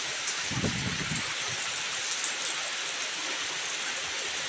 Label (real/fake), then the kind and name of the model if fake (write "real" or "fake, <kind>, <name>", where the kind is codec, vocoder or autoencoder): real